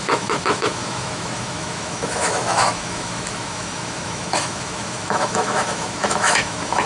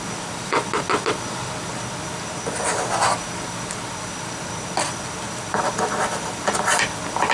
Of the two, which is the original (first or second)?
second